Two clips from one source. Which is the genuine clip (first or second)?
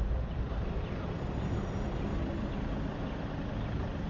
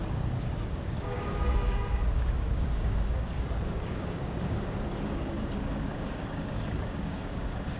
first